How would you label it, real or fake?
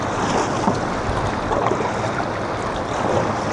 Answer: real